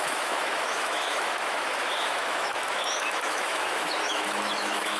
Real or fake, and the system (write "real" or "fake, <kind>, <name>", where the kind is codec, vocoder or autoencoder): fake, autoencoder, DAC-VAE